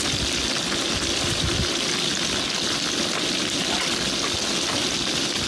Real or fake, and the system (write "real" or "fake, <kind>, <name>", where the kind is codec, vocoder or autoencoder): real